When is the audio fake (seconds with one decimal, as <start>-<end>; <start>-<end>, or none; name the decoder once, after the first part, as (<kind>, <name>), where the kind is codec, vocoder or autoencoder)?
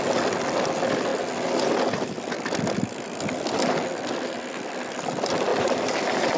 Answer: 5.5-6.4 (vocoder, BigVGAN v2)